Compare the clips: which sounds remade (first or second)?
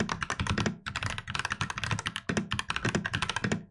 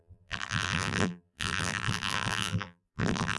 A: second